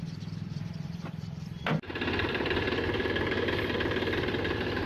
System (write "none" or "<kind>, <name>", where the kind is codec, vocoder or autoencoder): vocoder, BigVGAN v2